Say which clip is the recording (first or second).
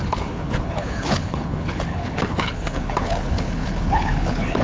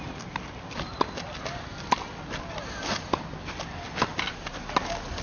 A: second